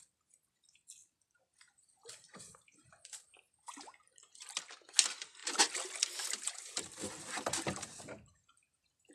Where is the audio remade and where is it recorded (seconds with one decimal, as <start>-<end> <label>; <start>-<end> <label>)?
0.0-1.0 recorded; 1.0-3.2 remade; 3.2-5.4 recorded; 5.4-8.0 remade; 8.0-9.1 recorded